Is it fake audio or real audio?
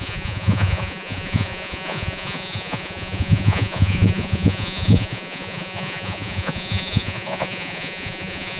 fake